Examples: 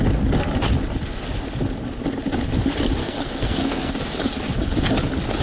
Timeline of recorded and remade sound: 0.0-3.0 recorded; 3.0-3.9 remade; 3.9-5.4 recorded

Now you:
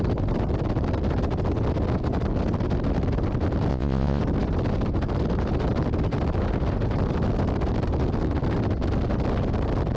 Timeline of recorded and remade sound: 0.0-3.7 recorded; 3.7-4.2 remade; 4.2-10.0 recorded

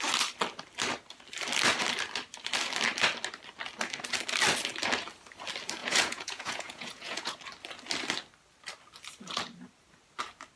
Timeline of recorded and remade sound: 0.0-5.8 recorded; 5.8-7.4 remade; 7.4-10.6 recorded

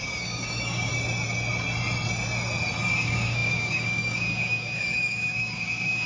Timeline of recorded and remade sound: 0.0-0.9 remade; 0.9-2.9 recorded; 2.9-6.1 remade

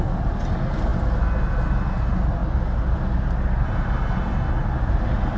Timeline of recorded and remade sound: 0.0-5.4 recorded